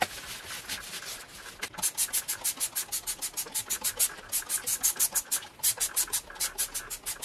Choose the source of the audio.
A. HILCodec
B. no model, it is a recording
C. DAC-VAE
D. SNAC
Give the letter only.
B